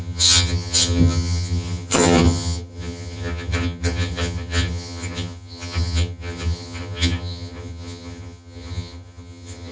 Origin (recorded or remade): remade